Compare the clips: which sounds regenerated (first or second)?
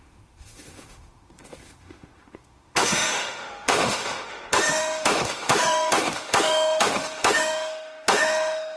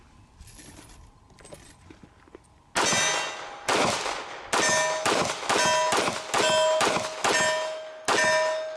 first